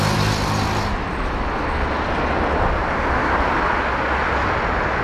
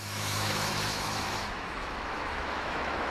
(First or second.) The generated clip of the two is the second